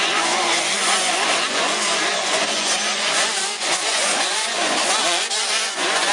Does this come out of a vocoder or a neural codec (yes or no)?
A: yes